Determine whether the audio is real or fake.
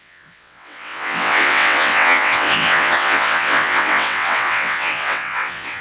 fake